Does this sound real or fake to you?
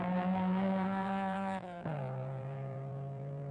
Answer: fake